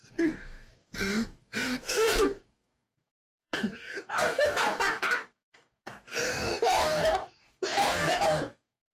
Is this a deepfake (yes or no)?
yes